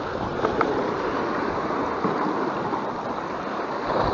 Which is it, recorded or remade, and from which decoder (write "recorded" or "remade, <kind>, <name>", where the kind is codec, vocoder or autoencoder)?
recorded